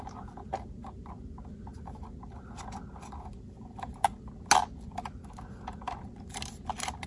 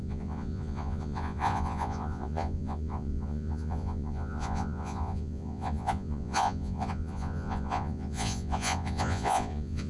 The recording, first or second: first